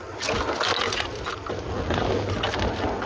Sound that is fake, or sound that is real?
real